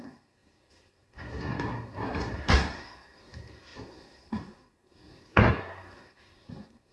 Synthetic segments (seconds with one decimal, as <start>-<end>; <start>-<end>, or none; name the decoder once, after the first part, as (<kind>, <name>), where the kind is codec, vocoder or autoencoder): 0.0-6.9 (codec, SNAC)